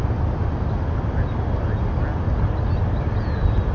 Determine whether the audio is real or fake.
real